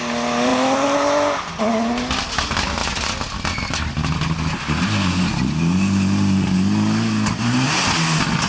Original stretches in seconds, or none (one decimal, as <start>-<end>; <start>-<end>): 0.0-8.5